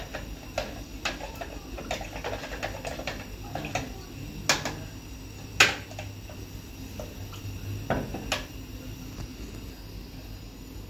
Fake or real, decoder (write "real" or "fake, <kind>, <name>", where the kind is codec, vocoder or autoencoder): real